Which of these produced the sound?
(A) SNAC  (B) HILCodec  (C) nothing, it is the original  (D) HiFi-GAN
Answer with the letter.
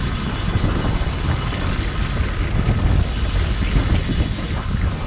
C